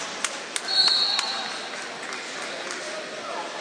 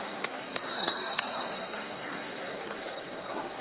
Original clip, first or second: first